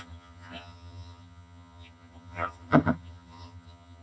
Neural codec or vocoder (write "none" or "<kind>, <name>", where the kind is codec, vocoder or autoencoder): vocoder, HiFi-GAN